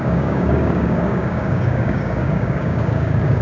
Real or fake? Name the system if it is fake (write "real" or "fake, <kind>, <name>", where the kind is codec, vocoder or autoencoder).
fake, codec, DAC